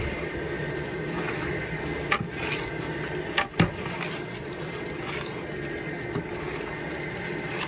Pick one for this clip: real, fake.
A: real